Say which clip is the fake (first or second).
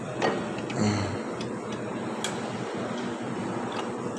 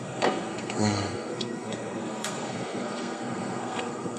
second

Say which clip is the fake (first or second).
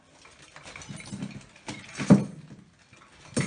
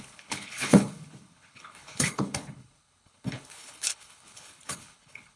second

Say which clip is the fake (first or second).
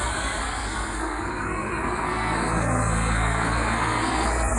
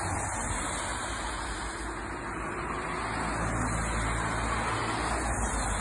first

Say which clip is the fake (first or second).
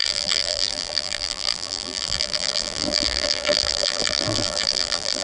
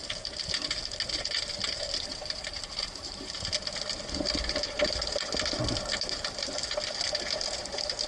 first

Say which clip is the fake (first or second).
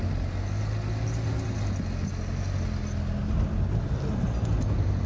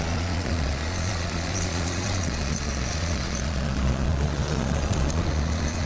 second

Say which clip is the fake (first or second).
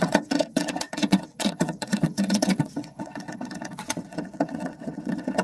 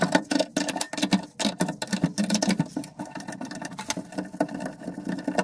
first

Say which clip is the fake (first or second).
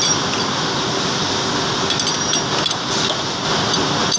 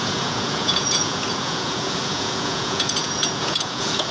second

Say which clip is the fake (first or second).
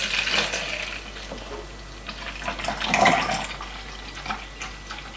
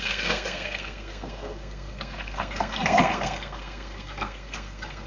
second